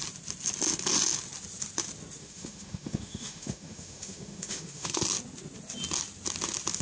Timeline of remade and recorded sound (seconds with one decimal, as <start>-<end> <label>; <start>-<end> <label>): 0.0-2.2 recorded; 2.2-5.0 remade; 5.0-6.8 recorded